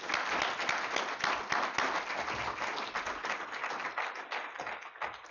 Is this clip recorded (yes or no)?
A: yes